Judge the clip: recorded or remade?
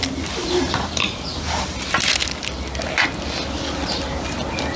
recorded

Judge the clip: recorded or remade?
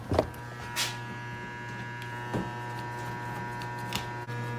recorded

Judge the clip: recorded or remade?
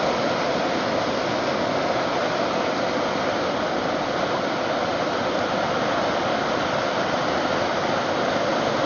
recorded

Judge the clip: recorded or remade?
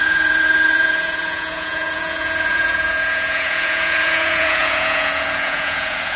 remade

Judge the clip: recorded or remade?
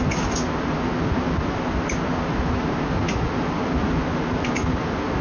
recorded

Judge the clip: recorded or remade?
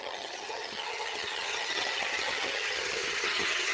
remade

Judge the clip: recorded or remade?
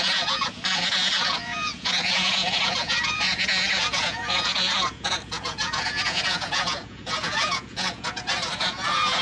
remade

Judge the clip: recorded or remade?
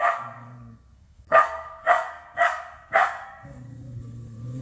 remade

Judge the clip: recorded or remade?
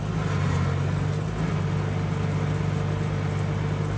recorded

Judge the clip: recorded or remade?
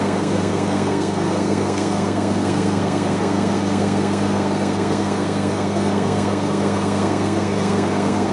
remade